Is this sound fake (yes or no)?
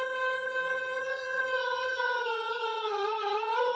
yes